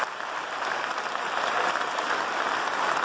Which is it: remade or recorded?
recorded